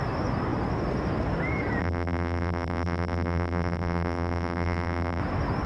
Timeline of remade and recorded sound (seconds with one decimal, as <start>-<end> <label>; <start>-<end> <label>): 0.0-1.8 recorded; 1.8-5.2 remade; 5.2-5.7 recorded